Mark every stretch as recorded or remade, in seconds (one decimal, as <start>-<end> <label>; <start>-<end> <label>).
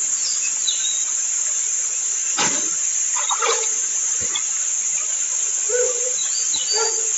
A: 0.0-6.2 remade; 6.2-7.2 recorded